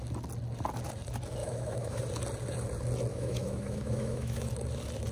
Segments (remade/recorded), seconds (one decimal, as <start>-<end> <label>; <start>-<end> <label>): 0.0-1.4 recorded; 1.4-2.0 remade; 2.0-3.1 recorded; 3.1-4.5 remade; 4.5-5.1 recorded